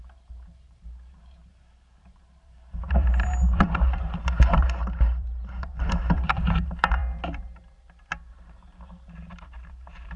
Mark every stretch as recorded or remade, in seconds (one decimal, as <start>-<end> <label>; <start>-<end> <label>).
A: 0.0-7.0 remade; 7.0-8.3 recorded; 8.3-10.2 remade